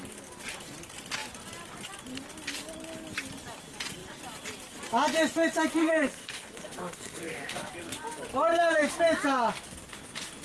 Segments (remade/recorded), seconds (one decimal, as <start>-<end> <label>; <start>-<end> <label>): 0.0-5.8 recorded; 5.8-7.7 remade; 7.7-8.5 recorded; 8.5-9.0 remade; 9.0-10.4 recorded